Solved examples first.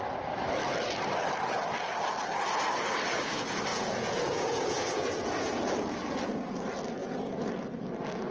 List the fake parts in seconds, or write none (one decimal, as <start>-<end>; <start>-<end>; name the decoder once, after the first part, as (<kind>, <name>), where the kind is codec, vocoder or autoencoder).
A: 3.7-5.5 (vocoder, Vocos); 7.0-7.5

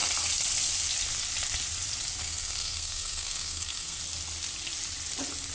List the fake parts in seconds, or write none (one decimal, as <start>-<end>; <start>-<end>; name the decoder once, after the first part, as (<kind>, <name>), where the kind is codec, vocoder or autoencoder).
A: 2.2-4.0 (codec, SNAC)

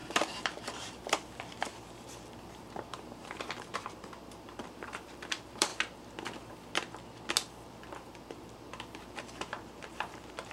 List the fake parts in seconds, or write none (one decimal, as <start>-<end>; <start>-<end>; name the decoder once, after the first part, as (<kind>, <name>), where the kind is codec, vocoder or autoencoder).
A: 0.0-5.7 (vocoder, BigVGAN v2); 7.5-10.5